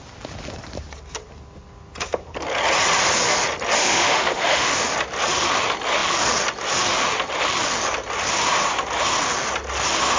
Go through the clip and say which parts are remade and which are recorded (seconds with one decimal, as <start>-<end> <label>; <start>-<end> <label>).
0.0-3.8 recorded; 3.8-4.7 remade; 4.7-10.2 recorded